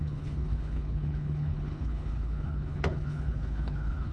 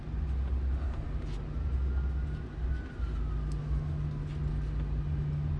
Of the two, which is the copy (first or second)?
first